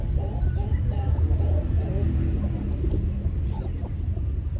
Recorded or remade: recorded